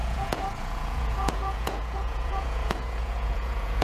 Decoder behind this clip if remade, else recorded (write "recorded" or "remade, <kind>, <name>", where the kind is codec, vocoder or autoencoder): remade, vocoder, Vocos